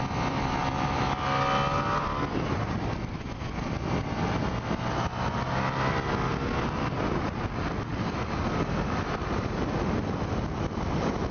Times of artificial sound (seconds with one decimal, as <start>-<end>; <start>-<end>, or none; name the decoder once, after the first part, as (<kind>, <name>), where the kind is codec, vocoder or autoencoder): none